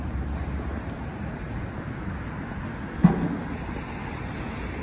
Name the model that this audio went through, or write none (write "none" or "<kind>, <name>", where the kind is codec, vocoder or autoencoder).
none